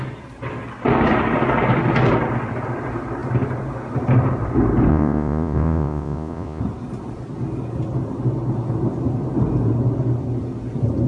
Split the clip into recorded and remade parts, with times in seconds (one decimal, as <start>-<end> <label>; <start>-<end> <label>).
0.0-4.9 recorded; 4.9-6.6 remade; 6.6-11.1 recorded